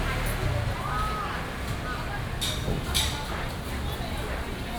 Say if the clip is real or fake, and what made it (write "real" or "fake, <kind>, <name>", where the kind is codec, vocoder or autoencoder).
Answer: real